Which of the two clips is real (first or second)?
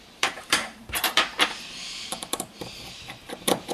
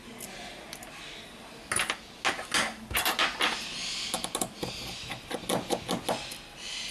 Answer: second